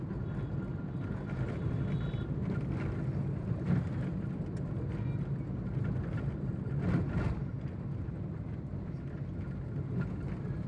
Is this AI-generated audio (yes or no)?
no